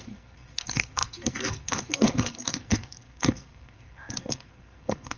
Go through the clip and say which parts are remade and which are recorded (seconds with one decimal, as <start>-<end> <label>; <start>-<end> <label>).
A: 0.0-5.2 remade